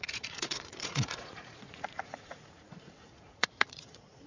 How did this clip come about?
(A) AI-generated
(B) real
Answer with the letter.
A